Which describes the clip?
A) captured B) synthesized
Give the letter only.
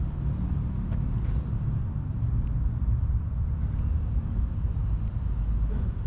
A